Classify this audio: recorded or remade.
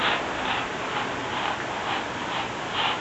recorded